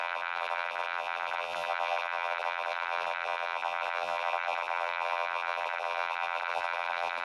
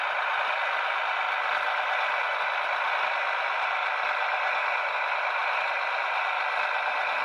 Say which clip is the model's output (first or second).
first